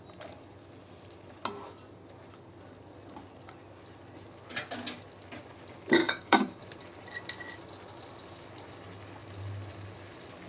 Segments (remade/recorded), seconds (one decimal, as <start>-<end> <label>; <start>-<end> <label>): 0.0-6.0 recorded; 6.0-6.6 remade; 6.6-10.5 recorded